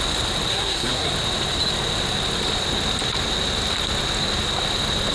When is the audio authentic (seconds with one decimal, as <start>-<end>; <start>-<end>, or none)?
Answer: 0.0-0.5; 1.1-5.1